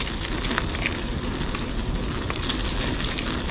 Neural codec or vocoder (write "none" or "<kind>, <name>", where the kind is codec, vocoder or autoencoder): none